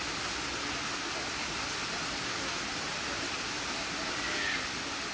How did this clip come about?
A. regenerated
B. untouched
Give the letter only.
B